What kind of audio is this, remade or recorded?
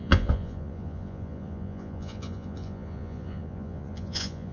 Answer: remade